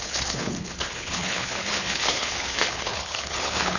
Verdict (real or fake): fake